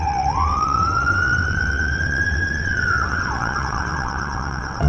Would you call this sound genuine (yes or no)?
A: no